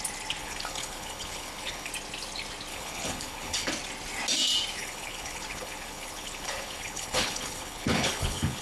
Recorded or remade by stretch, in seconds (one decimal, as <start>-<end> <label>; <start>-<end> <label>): 0.0-0.4 recorded; 0.4-1.9 remade; 1.9-2.7 recorded; 2.7-3.7 remade; 3.7-4.8 recorded; 4.8-8.6 remade

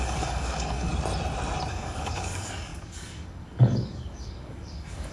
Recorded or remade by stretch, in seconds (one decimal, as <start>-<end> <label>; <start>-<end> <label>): 0.0-0.9 remade; 0.9-1.7 recorded; 1.7-5.1 remade

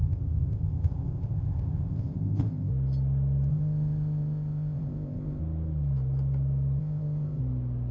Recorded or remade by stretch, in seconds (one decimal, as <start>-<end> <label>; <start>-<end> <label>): 0.0-2.7 remade; 2.7-3.5 recorded; 3.5-5.4 remade; 5.4-6.8 recorded; 6.8-7.4 remade; 7.4-7.9 recorded

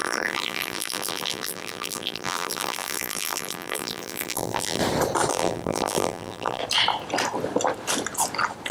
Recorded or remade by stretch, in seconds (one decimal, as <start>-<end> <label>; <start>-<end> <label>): 0.0-4.8 remade; 4.8-5.3 recorded; 5.3-6.6 remade; 6.6-8.7 recorded

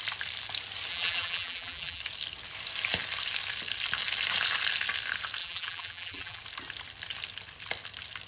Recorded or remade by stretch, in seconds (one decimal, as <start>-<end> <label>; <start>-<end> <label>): 0.0-0.9 recorded; 0.9-2.0 remade; 2.0-5.4 recorded; 5.4-6.4 remade; 6.4-8.3 recorded

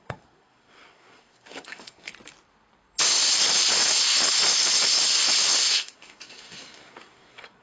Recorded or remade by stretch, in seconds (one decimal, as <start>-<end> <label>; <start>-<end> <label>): 0.0-2.1 remade; 2.1-5.5 recorded; 5.5-7.6 remade